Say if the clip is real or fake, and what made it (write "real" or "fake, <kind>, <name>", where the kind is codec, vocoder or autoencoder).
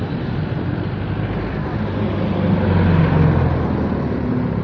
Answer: real